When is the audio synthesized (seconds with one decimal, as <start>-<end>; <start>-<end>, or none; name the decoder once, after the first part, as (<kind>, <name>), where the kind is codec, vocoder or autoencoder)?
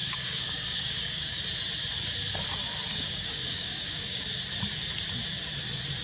0.0-1.4 (codec, DAC); 2.9-4.2